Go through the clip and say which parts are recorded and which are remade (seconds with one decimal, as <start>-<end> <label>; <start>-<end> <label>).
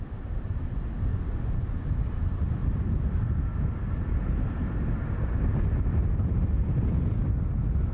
0.0-1.1 recorded; 1.1-1.9 remade; 1.9-7.9 recorded